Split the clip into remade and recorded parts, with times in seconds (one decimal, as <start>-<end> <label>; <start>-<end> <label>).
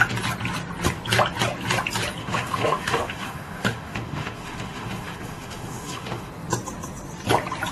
0.0-2.2 recorded; 2.2-6.3 remade; 6.3-7.7 recorded